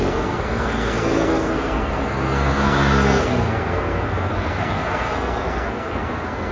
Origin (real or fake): fake